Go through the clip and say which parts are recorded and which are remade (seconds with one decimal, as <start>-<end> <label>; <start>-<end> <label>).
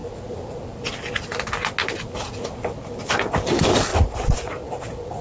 0.0-3.9 recorded; 3.9-4.5 remade; 4.5-5.2 recorded